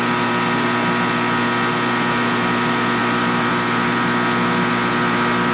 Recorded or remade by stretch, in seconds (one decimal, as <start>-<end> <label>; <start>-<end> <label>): 0.0-3.0 recorded; 3.0-3.5 remade; 3.5-5.5 recorded